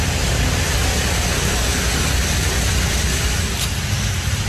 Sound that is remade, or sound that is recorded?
recorded